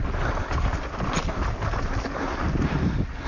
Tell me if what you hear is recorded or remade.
recorded